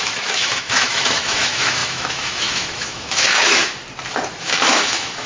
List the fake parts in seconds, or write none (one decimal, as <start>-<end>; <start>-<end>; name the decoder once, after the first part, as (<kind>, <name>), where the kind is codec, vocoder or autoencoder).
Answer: 0.0-3.6 (autoencoder, DAC-VAE); 4.4-5.3